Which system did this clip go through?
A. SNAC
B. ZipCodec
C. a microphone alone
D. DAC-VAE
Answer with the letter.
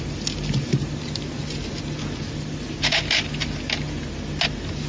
C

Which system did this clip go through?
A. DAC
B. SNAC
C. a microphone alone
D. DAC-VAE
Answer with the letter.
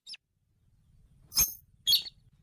C